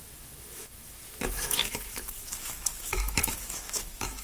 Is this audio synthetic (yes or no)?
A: yes